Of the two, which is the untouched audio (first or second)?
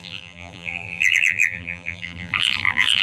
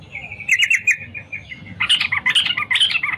second